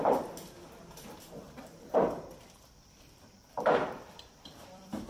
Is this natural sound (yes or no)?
no